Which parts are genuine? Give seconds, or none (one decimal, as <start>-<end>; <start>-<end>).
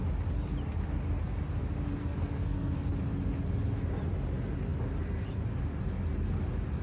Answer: 0.0-2.0; 2.9-6.8